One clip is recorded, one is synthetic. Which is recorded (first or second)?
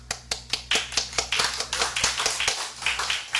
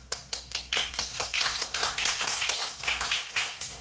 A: first